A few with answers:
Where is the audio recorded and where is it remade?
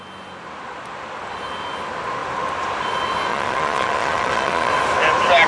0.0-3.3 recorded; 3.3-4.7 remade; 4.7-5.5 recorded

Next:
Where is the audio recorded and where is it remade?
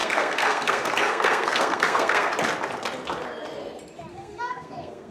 0.0-2.3 remade; 2.3-4.1 recorded; 4.1-5.1 remade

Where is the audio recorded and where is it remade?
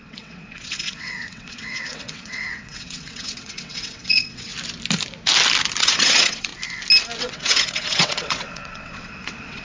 0.0-4.5 remade; 4.5-5.8 recorded; 5.8-6.5 remade; 6.5-7.2 recorded; 7.2-9.6 remade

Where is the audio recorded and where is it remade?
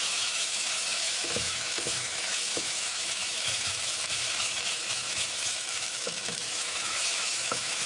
0.0-7.9 remade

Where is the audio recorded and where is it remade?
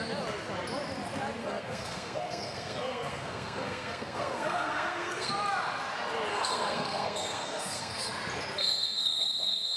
0.0-1.4 recorded; 1.4-5.3 remade; 5.3-6.3 recorded; 6.3-8.1 remade; 8.1-8.6 recorded; 8.6-9.8 remade